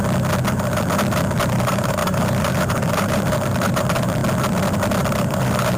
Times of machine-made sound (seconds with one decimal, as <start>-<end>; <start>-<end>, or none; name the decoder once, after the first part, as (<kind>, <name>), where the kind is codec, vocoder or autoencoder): 1.4-4.2 (vocoder, BigVGAN v2); 5.2-5.8